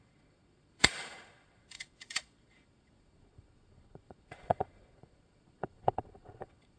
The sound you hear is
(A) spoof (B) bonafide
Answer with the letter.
A